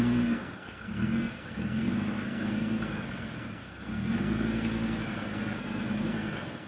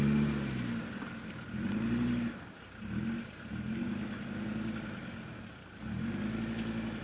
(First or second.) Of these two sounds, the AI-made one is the first